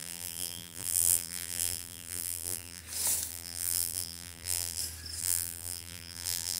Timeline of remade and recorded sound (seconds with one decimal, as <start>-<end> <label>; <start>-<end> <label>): 0.0-2.8 remade; 2.8-3.3 recorded; 3.3-4.8 remade; 4.8-5.2 recorded; 5.2-6.6 remade